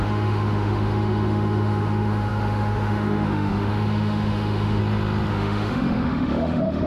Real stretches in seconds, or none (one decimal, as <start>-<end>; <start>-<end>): 4.8-5.3

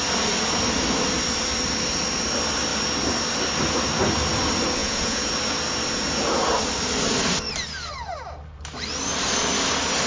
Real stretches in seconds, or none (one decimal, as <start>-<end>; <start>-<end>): 0.0-4.8; 5.3-10.1